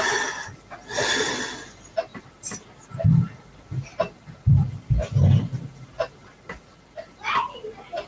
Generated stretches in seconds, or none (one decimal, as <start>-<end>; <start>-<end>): none